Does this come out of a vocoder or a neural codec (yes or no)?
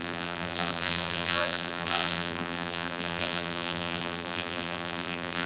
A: yes